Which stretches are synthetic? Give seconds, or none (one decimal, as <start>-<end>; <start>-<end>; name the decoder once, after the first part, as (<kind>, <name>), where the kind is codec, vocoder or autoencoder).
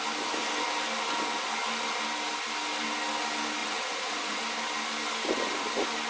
3.6-4.4 (vocoder, Vocos)